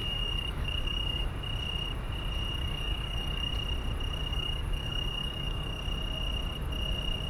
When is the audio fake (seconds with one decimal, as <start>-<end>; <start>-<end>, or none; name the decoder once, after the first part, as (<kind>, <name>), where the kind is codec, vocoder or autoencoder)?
0.0-1.3 (codec, DAC); 2.6-3.5; 4.2-5.8